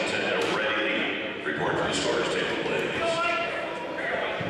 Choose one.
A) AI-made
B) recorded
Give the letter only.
A